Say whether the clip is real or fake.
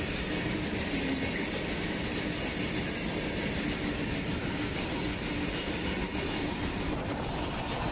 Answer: real